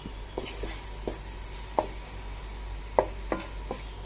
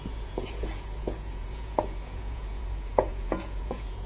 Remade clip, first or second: second